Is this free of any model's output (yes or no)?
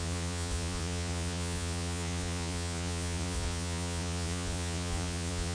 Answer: no